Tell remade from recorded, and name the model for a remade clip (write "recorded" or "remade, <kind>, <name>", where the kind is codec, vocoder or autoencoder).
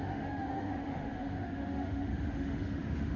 remade, autoencoder, DAC-VAE